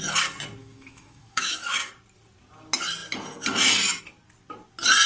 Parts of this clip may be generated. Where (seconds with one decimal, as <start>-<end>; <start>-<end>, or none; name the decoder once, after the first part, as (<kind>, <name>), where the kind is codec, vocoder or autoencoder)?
0.6-1.9 (autoencoder, DAC-VAE)